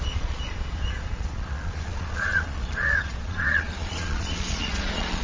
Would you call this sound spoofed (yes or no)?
yes